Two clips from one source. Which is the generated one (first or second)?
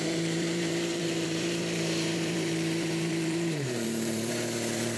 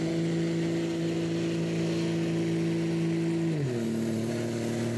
first